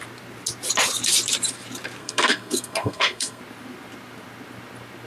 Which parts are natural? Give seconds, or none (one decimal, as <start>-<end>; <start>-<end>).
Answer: 0.0-2.0; 3.4-5.1